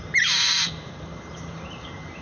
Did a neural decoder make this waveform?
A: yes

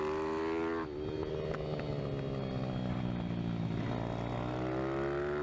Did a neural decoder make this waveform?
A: no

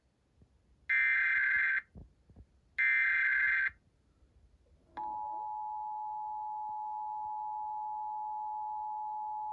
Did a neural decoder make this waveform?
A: no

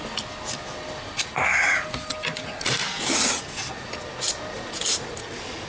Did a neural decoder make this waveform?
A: no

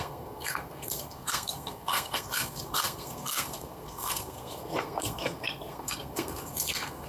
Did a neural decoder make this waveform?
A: yes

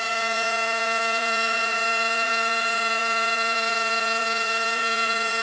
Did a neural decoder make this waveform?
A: yes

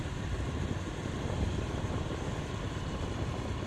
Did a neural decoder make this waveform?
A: yes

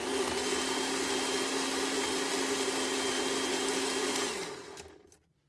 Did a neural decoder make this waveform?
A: no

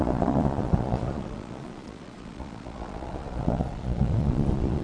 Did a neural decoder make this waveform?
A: yes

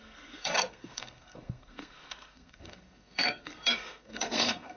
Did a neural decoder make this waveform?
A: yes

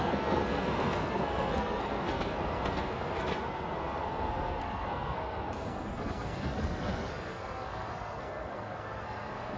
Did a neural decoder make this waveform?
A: yes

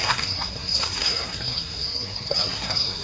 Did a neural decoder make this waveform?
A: yes